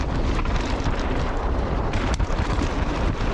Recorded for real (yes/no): yes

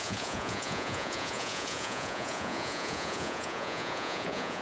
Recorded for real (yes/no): no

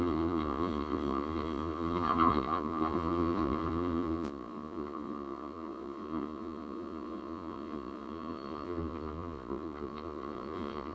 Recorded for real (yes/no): no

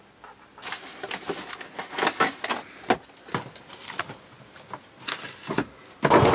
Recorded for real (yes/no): yes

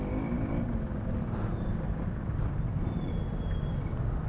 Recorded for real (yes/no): yes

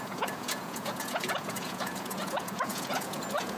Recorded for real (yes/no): no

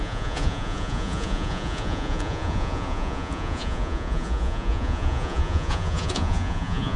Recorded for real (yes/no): no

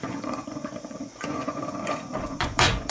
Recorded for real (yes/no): no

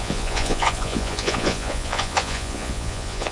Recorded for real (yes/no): no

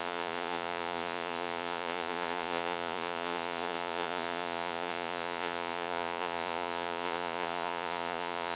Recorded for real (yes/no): no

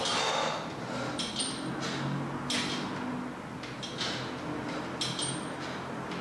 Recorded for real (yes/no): yes